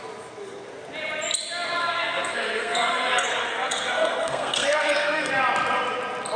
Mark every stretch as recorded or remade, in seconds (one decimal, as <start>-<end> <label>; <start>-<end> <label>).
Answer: 0.0-1.8 recorded; 1.8-5.3 remade; 5.3-6.4 recorded